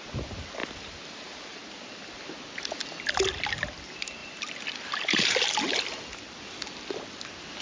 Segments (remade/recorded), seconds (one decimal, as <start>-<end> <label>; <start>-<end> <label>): 0.0-0.6 recorded; 0.6-1.7 remade; 1.7-4.2 recorded; 4.2-5.8 remade; 5.8-7.6 recorded